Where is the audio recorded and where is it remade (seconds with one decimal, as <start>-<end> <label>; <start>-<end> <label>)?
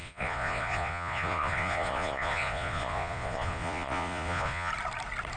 0.0-4.7 remade; 4.7-5.4 recorded